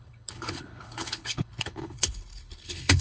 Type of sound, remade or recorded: remade